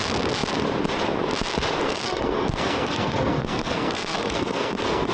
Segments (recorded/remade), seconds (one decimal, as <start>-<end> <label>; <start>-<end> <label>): 0.0-1.8 recorded; 1.8-5.1 remade